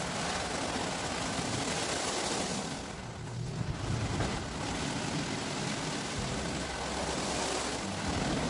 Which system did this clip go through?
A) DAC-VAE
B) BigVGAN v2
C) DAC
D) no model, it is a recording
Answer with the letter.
D